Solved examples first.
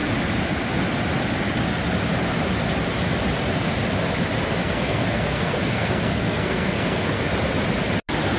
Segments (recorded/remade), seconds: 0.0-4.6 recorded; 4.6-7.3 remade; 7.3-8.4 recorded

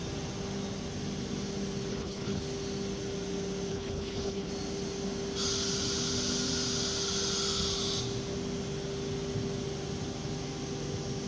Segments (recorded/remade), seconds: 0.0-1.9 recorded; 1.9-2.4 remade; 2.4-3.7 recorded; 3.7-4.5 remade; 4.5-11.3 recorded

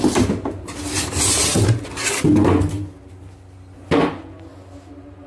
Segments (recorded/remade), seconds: 0.0-5.3 recorded

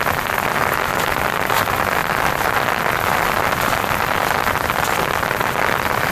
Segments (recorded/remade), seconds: 0.0-6.1 recorded

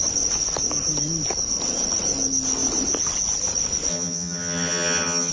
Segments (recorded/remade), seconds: 0.0-3.9 recorded; 3.9-5.3 remade

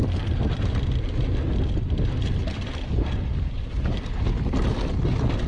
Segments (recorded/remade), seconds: 0.0-5.5 recorded